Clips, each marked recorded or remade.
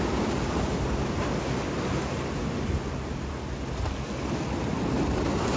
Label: recorded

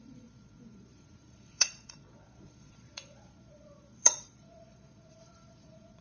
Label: remade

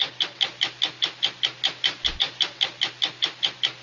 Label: recorded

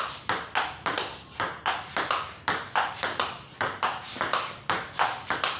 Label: recorded